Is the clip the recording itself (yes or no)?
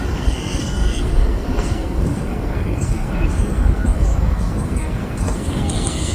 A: no